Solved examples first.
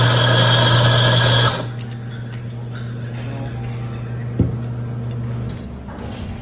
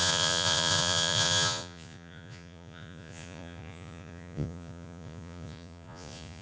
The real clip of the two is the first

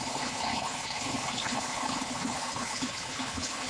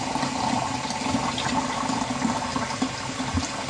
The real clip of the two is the second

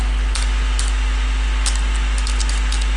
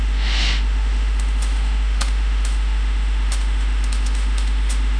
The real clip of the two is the first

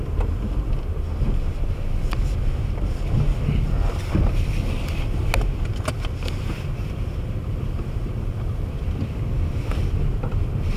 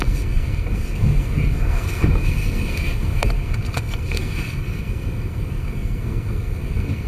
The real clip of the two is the first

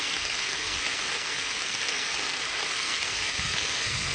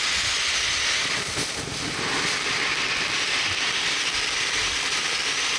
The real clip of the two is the second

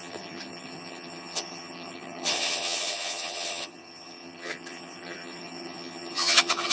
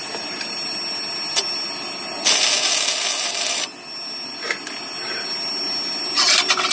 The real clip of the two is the second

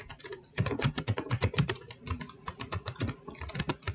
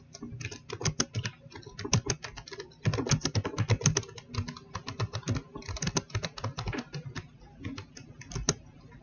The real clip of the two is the second